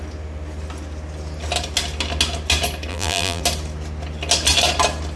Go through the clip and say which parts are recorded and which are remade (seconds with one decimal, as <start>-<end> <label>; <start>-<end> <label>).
0.0-2.9 recorded; 2.9-3.4 remade; 3.4-5.2 recorded